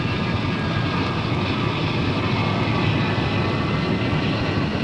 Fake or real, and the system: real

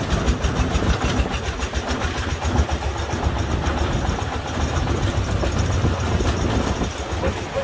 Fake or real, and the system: real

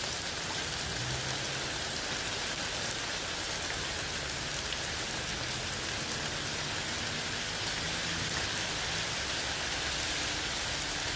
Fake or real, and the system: real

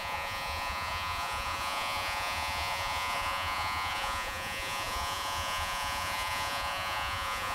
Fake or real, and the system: fake, vocoder, Vocos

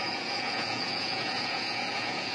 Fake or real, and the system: fake, vocoder, Vocos